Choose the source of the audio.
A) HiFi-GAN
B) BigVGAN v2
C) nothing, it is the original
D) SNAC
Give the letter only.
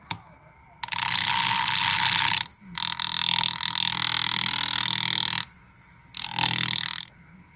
C